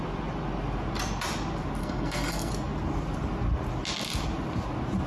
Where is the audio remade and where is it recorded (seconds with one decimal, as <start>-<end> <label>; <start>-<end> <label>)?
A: 0.0-1.8 recorded; 1.8-2.5 remade; 2.5-5.1 recorded